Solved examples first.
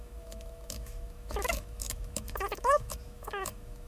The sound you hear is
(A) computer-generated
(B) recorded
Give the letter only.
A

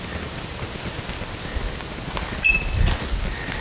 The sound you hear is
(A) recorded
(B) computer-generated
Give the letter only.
A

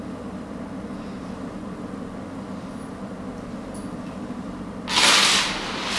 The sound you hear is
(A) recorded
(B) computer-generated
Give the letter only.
A